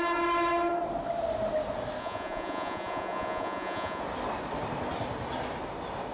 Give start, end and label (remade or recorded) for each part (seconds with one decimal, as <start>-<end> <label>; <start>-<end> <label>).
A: 0.0-2.0 recorded; 2.0-4.0 remade; 4.0-6.1 recorded